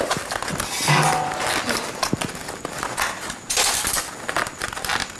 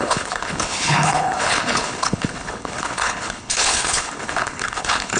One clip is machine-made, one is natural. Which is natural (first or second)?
first